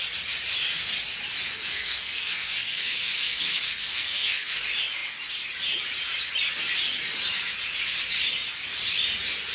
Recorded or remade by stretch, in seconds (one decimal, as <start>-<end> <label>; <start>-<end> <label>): 0.0-1.5 recorded; 1.5-4.6 remade; 4.6-9.5 recorded